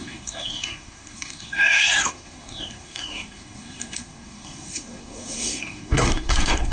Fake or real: fake